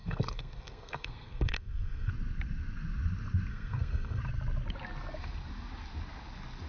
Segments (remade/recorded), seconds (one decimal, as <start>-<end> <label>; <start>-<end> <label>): 0.0-2.1 remade; 2.1-3.5 recorded; 3.5-4.2 remade; 4.2-6.7 recorded